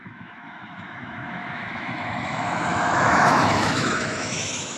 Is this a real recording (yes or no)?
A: no